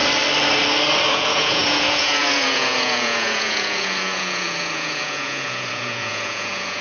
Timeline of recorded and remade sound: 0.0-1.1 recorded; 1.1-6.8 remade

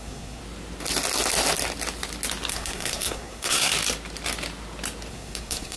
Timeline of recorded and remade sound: 0.0-0.4 remade; 0.4-2.5 recorded; 2.5-3.7 remade; 3.7-5.1 recorded; 5.1-5.8 remade